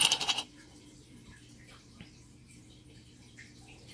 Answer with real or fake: fake